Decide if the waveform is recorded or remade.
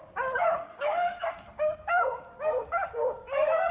remade